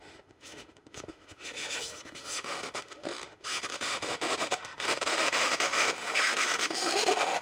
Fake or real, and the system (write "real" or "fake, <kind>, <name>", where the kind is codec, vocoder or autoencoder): fake, autoencoder, DAC-VAE